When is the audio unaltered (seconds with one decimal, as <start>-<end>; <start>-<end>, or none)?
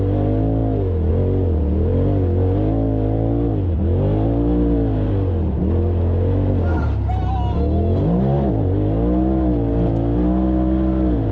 0.0-11.3